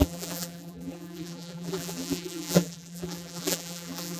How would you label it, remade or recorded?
remade